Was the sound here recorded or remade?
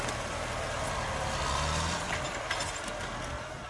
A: recorded